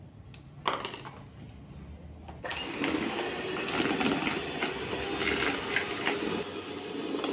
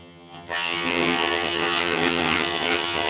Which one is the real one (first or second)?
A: first